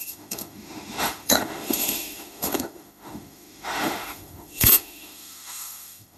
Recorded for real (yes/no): no